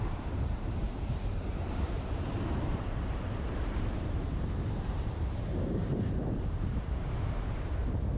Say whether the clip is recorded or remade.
remade